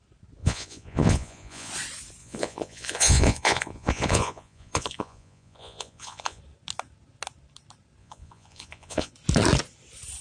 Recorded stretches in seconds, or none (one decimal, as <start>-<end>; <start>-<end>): 0.0-0.4; 1.7-2.2; 6.4-8.0; 9.1-10.2